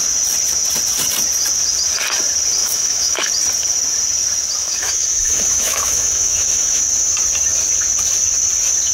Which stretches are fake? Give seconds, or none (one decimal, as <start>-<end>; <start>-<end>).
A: 2.6-3.3; 4.6-6.8